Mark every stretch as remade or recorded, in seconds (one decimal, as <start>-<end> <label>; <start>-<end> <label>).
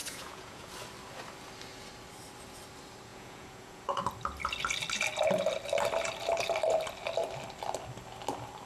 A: 0.0-0.7 remade; 0.7-3.1 recorded; 3.1-4.0 remade; 4.0-8.7 recorded